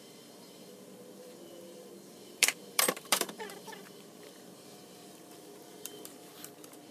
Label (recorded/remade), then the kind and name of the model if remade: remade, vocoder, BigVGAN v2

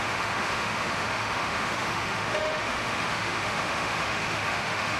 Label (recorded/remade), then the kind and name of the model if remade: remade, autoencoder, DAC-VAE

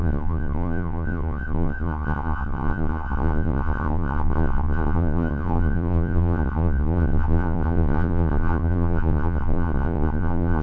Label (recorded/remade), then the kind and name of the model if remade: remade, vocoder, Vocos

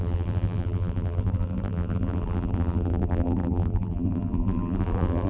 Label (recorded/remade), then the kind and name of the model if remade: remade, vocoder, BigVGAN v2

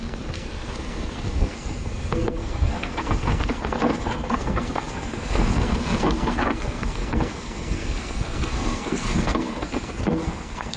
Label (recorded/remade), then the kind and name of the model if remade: remade, codec, SNAC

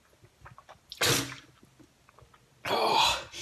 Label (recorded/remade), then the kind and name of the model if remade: recorded